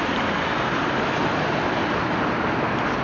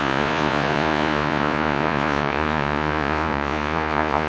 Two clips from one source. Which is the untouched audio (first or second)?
first